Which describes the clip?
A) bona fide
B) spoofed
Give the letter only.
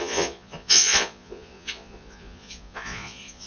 B